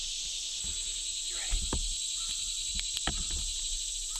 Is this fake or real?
real